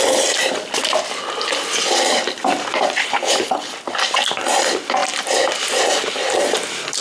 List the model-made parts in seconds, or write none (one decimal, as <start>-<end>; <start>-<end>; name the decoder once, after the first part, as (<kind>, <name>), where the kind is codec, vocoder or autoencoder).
3.0-3.7 (codec, HILCodec)